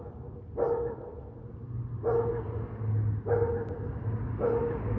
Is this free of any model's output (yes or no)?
yes